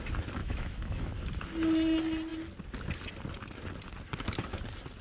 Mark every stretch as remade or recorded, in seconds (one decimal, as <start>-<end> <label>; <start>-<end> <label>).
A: 0.0-0.4 recorded; 0.4-1.1 remade; 1.1-5.0 recorded